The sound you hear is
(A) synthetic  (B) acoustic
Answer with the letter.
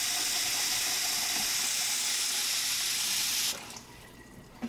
B